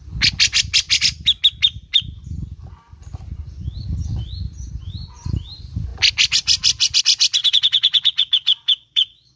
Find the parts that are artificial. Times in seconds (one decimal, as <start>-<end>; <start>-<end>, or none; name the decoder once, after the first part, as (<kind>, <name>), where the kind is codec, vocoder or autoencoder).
7.4-9.4 (vocoder, Vocos)